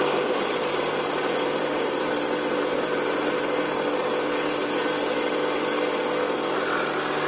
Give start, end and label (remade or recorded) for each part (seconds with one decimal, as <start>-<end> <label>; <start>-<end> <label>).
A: 0.0-0.6 recorded; 0.6-2.0 remade; 2.0-7.3 recorded